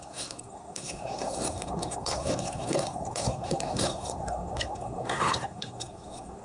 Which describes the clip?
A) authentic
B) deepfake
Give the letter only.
B